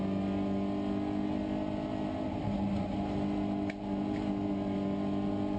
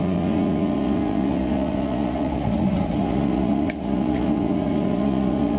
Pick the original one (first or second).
first